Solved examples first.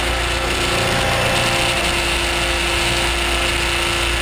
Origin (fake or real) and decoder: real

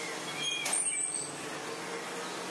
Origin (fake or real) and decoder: real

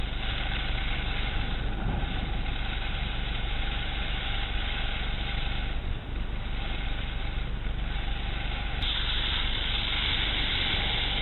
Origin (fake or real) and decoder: real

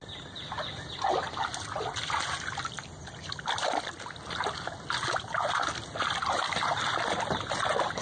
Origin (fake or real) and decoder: real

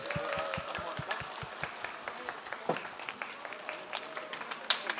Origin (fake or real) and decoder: real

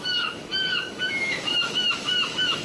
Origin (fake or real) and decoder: fake, autoencoder, DAC-VAE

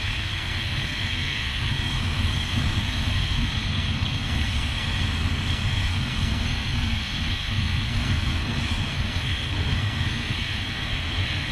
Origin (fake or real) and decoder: fake, codec, SNAC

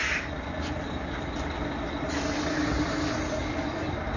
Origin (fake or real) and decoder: real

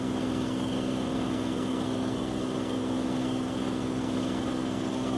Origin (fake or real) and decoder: fake, codec, SNAC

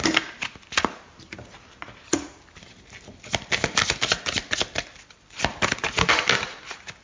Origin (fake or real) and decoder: real